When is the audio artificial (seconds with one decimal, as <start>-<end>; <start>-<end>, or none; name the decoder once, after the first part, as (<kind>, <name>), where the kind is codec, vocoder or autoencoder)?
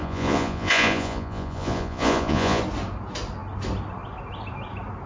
0.0-2.6 (vocoder, Vocos)